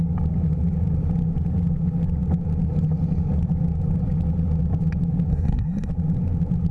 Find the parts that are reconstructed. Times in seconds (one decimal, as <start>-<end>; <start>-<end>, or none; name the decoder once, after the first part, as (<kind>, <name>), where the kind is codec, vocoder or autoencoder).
5.3-5.9 (codec, SNAC)